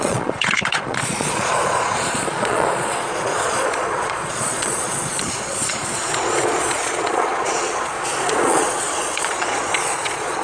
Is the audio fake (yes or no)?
yes